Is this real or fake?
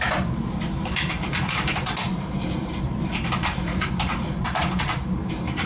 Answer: fake